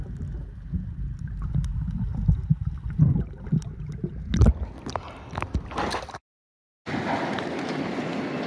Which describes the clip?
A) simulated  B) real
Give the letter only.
B